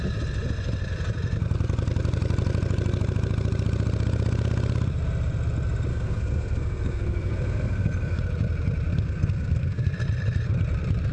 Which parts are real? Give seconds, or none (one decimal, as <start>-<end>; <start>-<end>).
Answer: 0.0-5.9; 8.2-8.9; 9.9-11.1